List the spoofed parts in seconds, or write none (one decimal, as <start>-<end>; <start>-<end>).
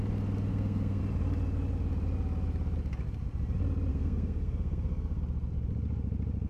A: 0.5-1.0; 3.9-5.2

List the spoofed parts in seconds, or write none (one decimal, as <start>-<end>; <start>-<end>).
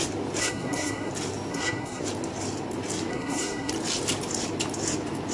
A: 0.4-1.1; 1.5-2.0; 3.1-3.7